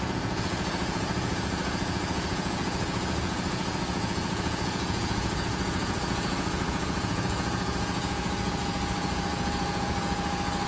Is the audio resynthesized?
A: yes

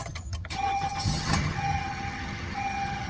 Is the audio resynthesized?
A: yes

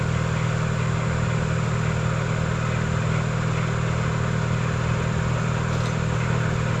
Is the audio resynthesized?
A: no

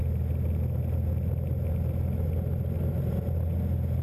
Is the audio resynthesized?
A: no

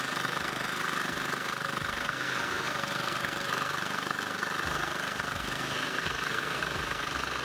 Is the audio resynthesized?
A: yes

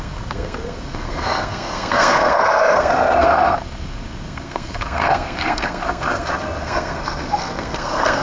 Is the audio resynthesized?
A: yes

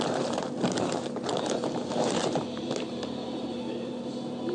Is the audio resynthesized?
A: yes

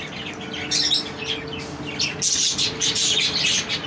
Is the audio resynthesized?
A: no